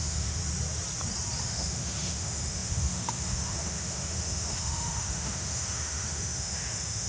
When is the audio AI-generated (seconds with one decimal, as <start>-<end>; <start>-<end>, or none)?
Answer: 0.0-0.4; 1.4-7.1